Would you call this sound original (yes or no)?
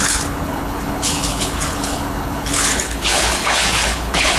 no